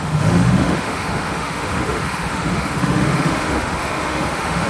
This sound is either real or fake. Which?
fake